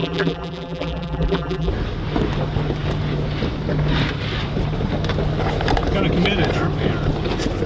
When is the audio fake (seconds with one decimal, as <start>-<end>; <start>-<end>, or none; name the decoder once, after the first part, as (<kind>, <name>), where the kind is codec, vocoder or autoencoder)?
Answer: 0.0-1.7 (vocoder, BigVGAN v2)

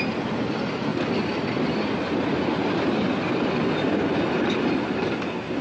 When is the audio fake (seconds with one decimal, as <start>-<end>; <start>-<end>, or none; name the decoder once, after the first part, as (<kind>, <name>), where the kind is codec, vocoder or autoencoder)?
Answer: none

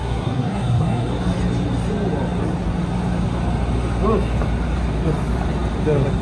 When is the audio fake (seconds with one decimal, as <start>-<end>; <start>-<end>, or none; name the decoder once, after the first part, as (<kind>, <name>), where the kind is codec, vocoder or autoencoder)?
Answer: 0.0-1.1 (codec, SNAC)

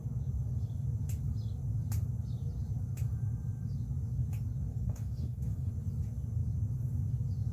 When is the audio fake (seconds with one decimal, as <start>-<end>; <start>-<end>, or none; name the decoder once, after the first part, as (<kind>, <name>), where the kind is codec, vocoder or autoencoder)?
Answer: 4.7-5.7 (codec, DAC)

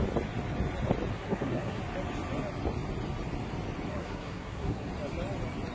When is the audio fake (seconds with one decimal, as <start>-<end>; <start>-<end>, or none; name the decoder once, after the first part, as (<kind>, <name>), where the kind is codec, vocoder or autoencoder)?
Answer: 1.1-1.8 (codec, SNAC); 3.9-4.9

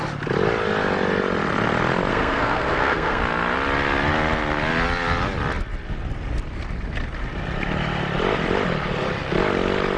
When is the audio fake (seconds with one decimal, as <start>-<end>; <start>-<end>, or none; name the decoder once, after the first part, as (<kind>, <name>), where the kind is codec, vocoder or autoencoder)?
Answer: 2.1-3.2 (codec, SNAC)

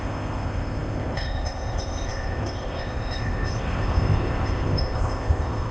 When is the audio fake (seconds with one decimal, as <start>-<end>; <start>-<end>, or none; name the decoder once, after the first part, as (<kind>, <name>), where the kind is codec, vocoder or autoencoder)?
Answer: 0.0-5.7 (codec, ZipCodec)

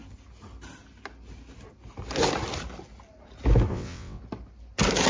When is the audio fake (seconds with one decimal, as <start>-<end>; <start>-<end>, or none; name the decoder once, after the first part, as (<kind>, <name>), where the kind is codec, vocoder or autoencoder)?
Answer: 3.7-4.2 (vocoder, WaveNeXt)